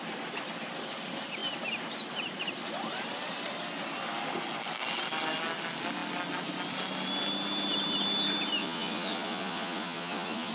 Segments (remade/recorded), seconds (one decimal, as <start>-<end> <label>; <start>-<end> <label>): 0.0-8.6 recorded; 8.6-10.5 remade

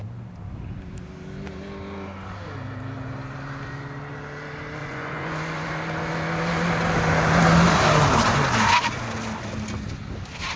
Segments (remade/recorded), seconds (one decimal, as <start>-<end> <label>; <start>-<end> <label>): 0.0-4.8 recorded; 4.8-5.7 remade; 5.7-10.6 recorded

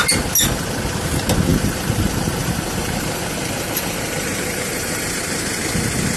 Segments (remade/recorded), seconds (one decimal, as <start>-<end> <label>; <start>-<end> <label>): 0.0-1.5 recorded; 1.5-5.2 remade; 5.2-6.2 recorded

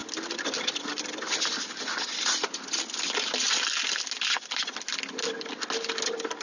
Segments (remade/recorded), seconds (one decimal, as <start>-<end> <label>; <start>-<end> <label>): 0.0-6.4 recorded

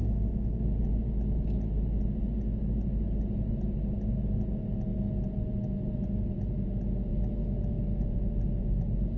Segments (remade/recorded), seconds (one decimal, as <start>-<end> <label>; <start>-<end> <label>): 0.0-9.2 recorded

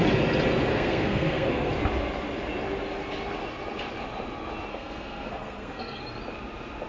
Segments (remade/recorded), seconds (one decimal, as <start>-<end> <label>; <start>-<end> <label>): 0.0-0.7 recorded; 0.7-1.7 remade; 1.7-4.7 recorded; 4.7-6.0 remade; 6.0-6.9 recorded

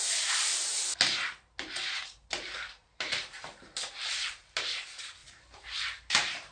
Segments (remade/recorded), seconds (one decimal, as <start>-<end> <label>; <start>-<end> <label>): 0.0-0.7 remade; 0.7-1.9 recorded; 1.9-6.5 remade